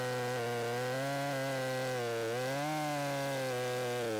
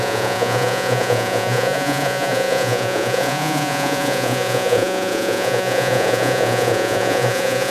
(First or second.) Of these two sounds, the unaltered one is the first